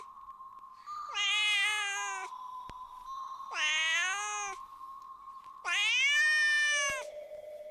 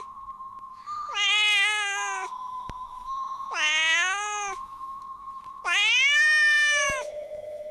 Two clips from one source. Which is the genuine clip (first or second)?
first